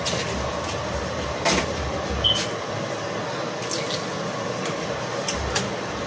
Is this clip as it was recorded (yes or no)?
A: yes